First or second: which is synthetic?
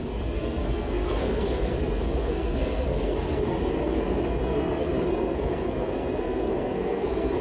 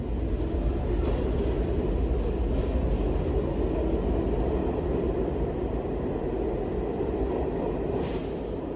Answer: first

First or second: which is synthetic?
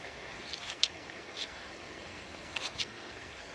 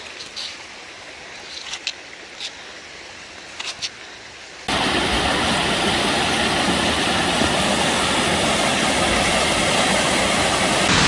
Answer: first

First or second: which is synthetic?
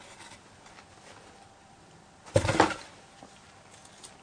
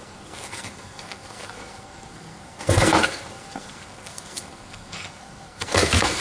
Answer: second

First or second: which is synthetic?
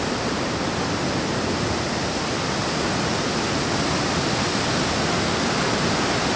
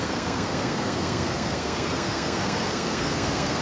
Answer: second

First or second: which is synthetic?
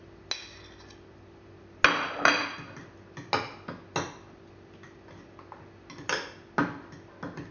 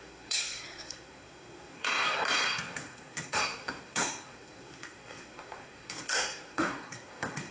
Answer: second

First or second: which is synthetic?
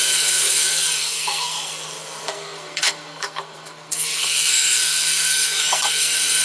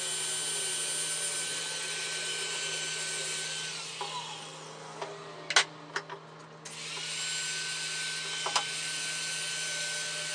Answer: first